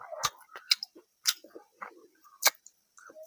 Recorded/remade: remade